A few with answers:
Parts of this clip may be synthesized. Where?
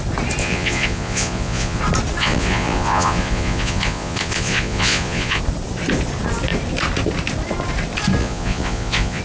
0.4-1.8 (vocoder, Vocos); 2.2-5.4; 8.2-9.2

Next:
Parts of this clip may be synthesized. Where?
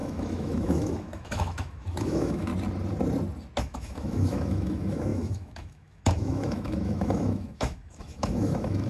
0.0-2.5 (autoencoder, DAC-VAE); 3.6-8.9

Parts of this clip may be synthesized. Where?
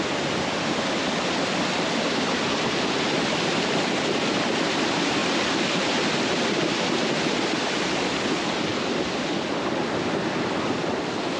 none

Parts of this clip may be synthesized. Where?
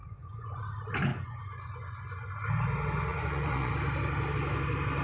0.0-0.6 (vocoder, Vocos); 1.1-2.3; 3.1-3.7